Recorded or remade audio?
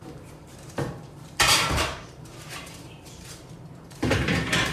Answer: remade